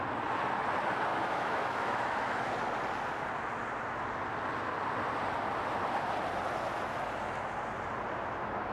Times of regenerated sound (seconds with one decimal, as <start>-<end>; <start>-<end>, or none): 1.1-2.5